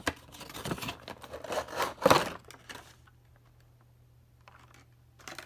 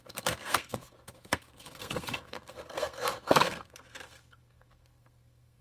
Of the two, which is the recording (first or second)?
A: first